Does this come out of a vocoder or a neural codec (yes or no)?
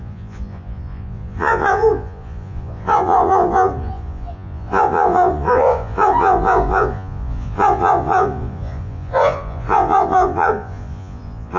yes